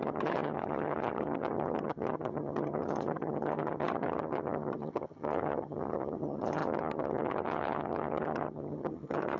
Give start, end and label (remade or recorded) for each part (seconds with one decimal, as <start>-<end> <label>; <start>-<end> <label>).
0.0-9.4 remade